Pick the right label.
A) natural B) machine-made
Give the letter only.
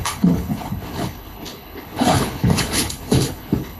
B